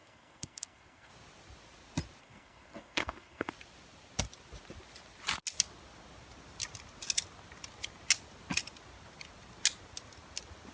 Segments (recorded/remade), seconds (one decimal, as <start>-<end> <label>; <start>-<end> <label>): 0.0-1.1 remade; 1.1-2.2 recorded; 2.2-3.5 remade; 3.5-10.7 recorded